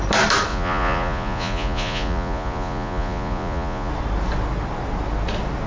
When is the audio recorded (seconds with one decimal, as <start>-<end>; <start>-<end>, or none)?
0.0-0.5; 3.9-5.7